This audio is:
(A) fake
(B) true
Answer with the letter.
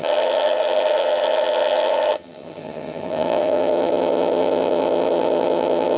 A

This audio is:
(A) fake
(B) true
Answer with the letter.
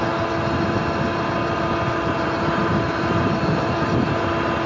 B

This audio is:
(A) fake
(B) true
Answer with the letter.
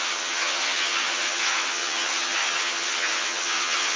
A